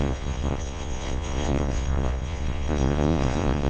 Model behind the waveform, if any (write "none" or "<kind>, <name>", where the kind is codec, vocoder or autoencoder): vocoder, Vocos